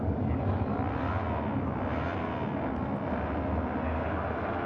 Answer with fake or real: real